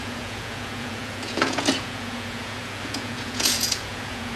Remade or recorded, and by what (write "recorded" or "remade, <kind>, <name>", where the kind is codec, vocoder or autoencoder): remade, vocoder, Vocos